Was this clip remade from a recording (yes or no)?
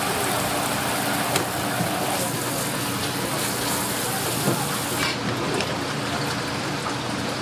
no